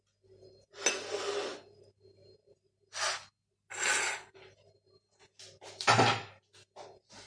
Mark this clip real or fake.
real